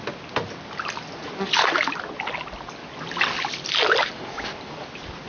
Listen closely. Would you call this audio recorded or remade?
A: recorded